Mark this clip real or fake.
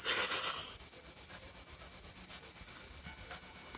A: real